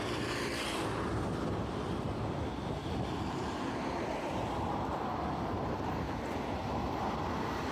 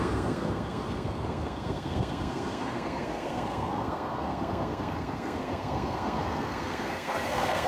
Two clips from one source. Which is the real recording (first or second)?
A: first